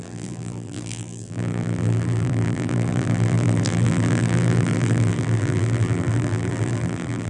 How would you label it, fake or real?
fake